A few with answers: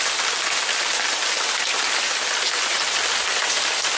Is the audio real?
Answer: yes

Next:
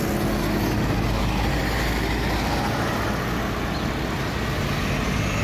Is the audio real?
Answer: yes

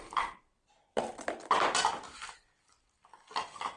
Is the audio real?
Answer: yes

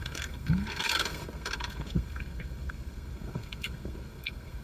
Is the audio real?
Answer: no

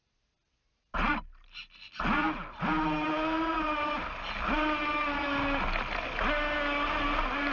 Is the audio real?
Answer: yes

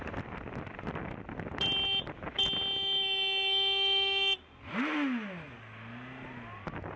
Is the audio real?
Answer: yes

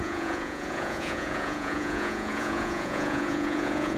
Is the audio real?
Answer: no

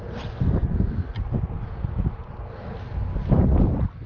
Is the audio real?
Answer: yes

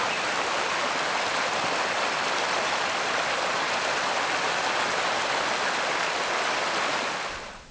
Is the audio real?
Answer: yes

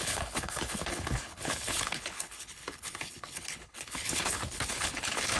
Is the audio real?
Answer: no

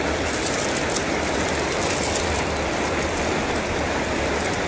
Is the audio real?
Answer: yes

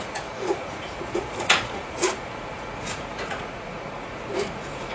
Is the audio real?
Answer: no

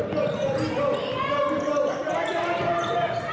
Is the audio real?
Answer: yes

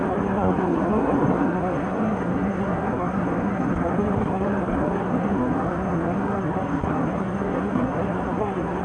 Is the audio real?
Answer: no